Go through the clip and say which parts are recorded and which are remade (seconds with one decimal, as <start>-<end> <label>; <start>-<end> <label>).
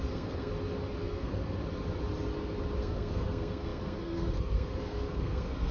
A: 0.0-0.5 remade; 0.5-1.0 recorded; 1.0-1.6 remade; 1.6-2.8 recorded; 2.8-5.7 remade